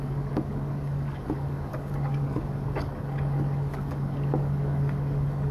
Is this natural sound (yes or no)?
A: no